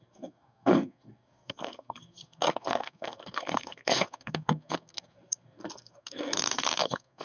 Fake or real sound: fake